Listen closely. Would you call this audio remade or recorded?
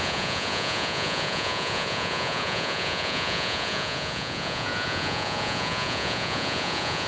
remade